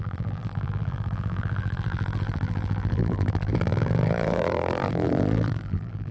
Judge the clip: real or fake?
fake